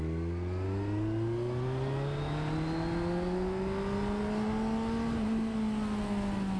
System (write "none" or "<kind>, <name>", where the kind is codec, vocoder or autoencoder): none